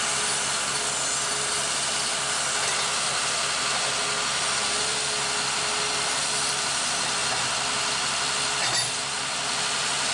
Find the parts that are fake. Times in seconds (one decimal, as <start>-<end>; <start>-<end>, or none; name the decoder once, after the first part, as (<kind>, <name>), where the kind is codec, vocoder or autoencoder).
none